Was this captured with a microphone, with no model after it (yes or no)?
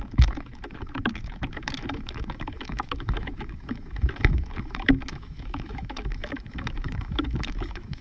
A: no